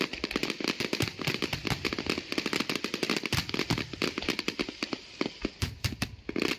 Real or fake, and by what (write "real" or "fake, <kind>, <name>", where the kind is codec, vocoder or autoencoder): real